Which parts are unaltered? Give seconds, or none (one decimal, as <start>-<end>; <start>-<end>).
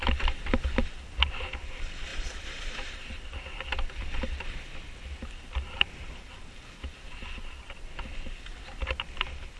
0.0-2.1; 3.1-5.2; 6.3-8.5; 9.2-9.6